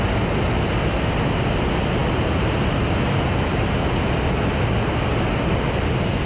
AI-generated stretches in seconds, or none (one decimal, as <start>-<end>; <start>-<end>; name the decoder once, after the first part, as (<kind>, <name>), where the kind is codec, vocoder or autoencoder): none